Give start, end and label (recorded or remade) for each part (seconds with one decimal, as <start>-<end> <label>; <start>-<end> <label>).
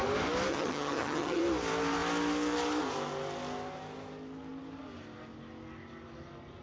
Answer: 0.0-0.5 recorded; 0.5-1.4 remade; 1.4-6.6 recorded